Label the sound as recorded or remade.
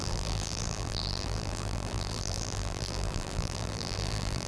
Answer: remade